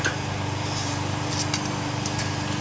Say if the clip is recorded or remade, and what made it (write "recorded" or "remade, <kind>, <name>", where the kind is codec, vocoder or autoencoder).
recorded